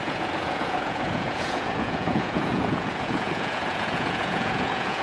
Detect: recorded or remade remade